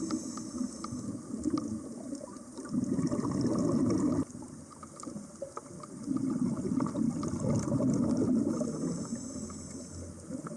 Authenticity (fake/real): real